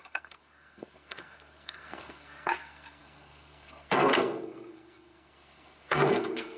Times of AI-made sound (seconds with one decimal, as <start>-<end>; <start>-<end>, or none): 0.0-6.6